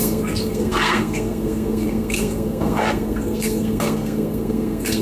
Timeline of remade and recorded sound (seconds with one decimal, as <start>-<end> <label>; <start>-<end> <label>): 0.0-5.0 remade